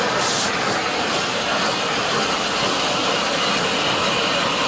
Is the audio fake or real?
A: real